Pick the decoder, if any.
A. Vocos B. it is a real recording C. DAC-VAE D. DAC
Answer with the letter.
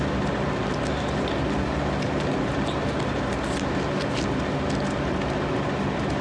B